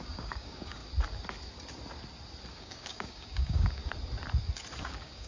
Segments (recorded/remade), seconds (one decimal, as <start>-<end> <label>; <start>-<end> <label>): 0.0-0.8 remade; 0.8-2.5 recorded; 2.5-3.8 remade; 3.8-4.8 recorded; 4.8-5.3 remade